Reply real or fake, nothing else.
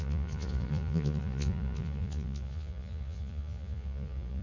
fake